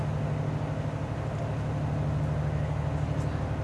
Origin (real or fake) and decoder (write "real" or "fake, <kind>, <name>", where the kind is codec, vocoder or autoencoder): real